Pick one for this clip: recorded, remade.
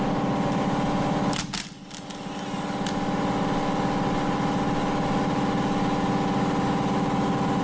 recorded